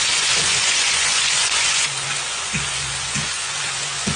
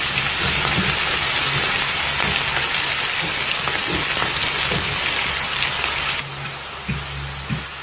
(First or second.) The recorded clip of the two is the second